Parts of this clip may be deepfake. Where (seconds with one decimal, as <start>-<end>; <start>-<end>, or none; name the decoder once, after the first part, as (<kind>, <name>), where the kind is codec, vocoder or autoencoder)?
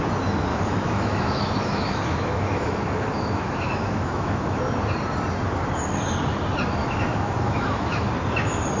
0.5-4.6 (autoencoder, DAC-VAE); 6.8-8.1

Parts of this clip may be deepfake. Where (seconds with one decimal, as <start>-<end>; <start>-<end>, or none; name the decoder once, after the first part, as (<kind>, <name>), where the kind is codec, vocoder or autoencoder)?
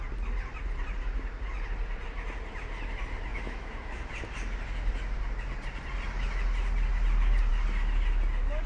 3.3-4.1 (autoencoder, DAC-VAE)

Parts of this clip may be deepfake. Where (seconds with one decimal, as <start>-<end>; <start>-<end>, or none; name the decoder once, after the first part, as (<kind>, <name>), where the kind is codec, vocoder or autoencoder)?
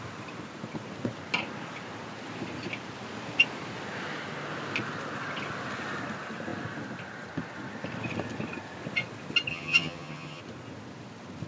9.5-10.4 (vocoder, HiFi-GAN)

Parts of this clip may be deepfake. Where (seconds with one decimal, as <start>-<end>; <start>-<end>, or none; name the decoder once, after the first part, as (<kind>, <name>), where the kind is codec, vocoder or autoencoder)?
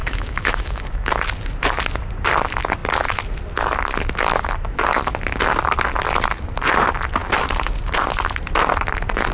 0.0-1.1 (autoencoder, DAC-VAE)